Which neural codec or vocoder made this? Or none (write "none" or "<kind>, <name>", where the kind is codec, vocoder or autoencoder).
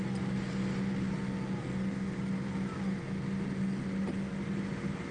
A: none